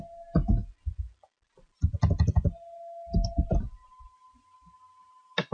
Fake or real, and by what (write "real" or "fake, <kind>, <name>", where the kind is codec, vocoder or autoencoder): real